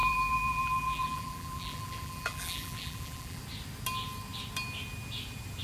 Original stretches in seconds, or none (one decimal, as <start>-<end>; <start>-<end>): 3.4-5.6